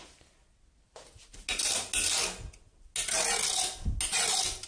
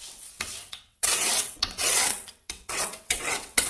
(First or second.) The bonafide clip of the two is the first